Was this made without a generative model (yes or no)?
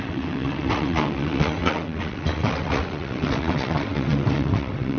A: no